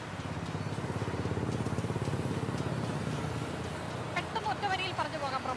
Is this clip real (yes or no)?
yes